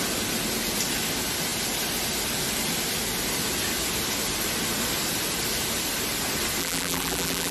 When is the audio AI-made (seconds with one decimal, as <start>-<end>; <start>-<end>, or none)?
6.6-7.5